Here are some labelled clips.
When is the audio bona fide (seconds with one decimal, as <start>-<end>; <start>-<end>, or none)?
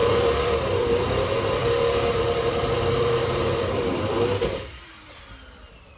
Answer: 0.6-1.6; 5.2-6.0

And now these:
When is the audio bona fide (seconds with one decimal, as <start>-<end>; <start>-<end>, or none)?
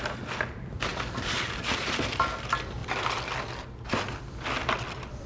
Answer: 0.0-5.3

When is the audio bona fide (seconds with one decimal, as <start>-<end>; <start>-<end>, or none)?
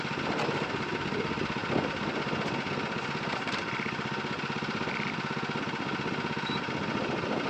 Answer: 0.0-7.5